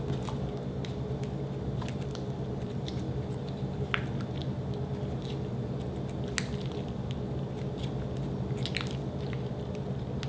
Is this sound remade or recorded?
recorded